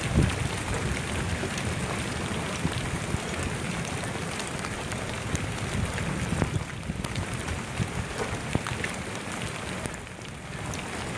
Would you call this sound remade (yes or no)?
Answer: no